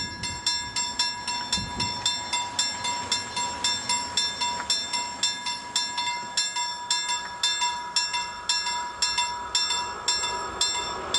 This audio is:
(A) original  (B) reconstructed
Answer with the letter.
A